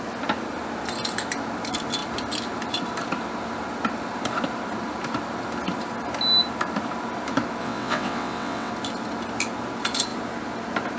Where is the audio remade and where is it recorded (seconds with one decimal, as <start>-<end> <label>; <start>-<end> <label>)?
0.0-7.6 recorded; 7.6-8.7 remade; 8.7-11.0 recorded